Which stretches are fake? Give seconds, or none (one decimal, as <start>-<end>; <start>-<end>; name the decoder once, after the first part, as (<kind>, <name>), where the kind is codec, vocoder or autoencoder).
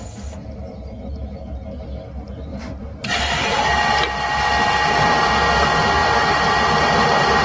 2.5-3.6 (vocoder, BigVGAN v2); 6.0-7.4